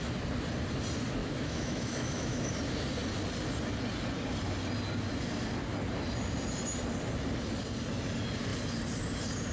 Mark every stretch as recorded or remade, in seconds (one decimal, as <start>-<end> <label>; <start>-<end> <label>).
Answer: 0.0-1.2 recorded; 1.2-2.5 remade; 2.5-9.5 recorded